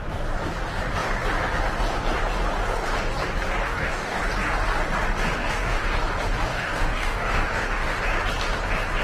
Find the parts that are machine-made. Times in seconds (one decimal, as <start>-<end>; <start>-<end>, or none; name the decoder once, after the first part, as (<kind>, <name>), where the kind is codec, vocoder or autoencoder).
3.6-4.2 (codec, DAC); 5.4-6.0; 6.5-8.0